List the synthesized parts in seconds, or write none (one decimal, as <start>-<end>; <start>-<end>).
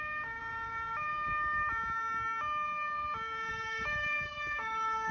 0.0-0.4; 3.5-5.1